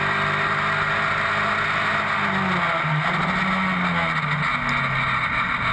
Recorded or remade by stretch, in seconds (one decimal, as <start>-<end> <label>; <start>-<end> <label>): 0.0-5.7 recorded